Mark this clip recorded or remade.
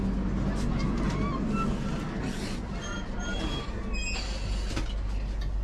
recorded